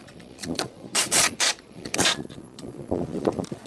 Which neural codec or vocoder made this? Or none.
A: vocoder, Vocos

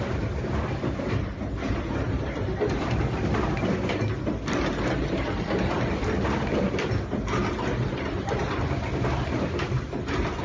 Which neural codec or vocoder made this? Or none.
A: none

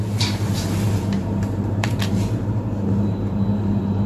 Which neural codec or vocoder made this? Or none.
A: vocoder, BigVGAN v2